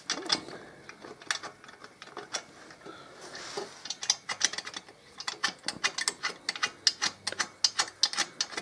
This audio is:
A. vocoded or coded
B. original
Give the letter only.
B